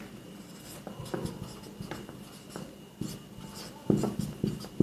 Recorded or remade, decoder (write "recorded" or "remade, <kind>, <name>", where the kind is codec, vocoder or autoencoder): recorded